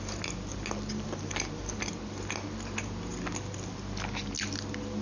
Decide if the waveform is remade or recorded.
recorded